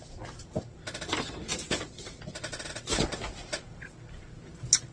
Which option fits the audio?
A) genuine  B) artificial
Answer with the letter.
A